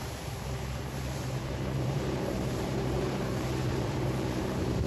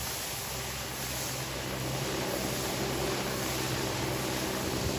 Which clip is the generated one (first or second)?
first